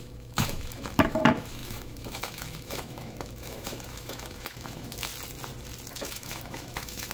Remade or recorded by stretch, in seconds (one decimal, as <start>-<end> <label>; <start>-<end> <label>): 0.0-5.1 remade; 5.1-5.9 recorded; 5.9-7.1 remade